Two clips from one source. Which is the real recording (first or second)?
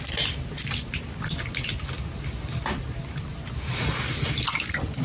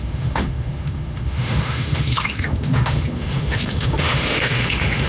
first